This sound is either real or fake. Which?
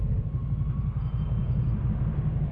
real